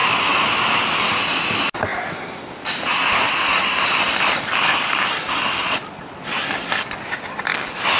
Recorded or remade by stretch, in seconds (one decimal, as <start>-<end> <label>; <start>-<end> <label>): 0.0-0.6 remade; 0.6-1.9 recorded; 1.9-5.2 remade; 5.2-8.0 recorded